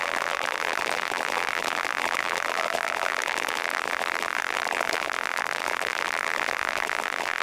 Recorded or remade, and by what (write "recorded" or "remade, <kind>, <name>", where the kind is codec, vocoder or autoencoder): remade, vocoder, BigVGAN v2